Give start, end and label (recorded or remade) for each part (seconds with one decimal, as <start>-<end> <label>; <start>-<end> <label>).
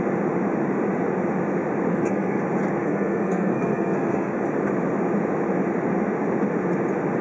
0.0-1.9 recorded; 1.9-2.4 remade; 2.4-2.8 recorded; 2.8-4.4 remade; 4.4-7.2 recorded